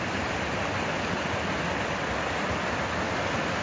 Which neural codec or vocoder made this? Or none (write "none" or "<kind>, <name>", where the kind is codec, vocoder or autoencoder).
none